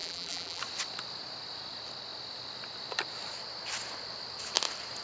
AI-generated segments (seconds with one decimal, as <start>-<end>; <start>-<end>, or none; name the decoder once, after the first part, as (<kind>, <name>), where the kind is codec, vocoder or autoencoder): 0.0-0.6 (vocoder, BigVGAN v2)